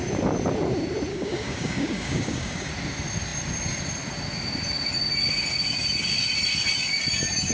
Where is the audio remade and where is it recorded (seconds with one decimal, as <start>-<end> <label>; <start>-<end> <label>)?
0.0-1.1 recorded; 1.1-2.7 remade; 2.7-7.5 recorded